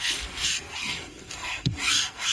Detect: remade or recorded remade